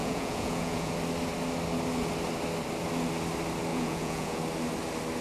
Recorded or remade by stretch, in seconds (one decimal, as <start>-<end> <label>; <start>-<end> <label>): 0.0-0.9 remade; 0.9-3.7 recorded; 3.7-4.4 remade; 4.4-5.2 recorded